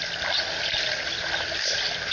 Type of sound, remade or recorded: recorded